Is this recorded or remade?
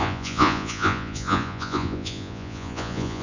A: remade